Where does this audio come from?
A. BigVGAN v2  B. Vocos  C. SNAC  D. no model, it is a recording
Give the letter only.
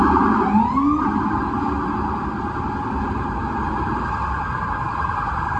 D